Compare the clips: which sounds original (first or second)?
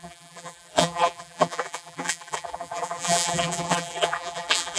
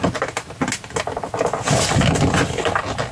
second